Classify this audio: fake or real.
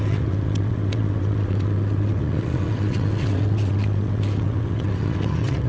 fake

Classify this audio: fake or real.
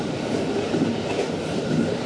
fake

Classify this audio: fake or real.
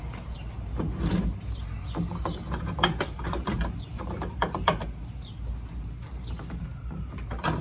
fake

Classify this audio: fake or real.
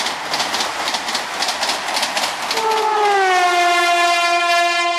real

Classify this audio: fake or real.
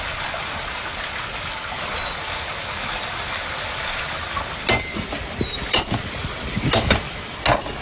real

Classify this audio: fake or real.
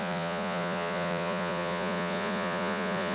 fake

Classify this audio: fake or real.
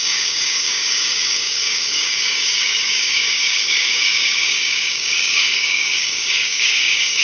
fake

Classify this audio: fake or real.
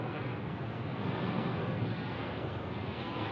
fake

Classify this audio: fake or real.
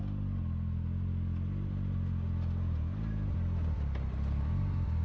real